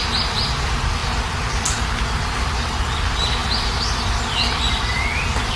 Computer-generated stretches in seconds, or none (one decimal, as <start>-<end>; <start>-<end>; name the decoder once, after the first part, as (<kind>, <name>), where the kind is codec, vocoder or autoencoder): none